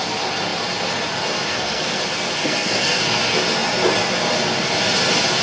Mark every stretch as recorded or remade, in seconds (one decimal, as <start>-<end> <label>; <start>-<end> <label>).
0.0-1.5 recorded; 1.5-2.0 remade; 2.0-2.4 recorded; 2.4-3.0 remade; 3.0-5.4 recorded